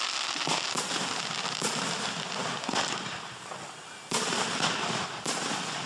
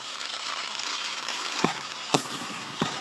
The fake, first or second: second